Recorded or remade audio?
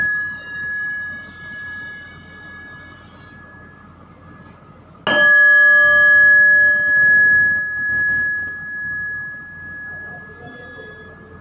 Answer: recorded